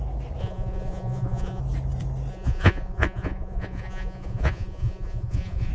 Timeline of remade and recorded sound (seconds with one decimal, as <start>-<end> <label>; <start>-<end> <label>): 0.0-0.4 recorded; 0.4-1.6 remade; 1.6-2.3 recorded; 2.3-5.7 remade